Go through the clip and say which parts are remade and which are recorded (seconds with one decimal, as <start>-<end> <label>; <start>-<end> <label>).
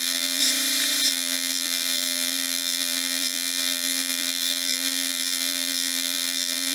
0.0-0.4 remade; 0.4-1.1 recorded; 1.1-6.7 remade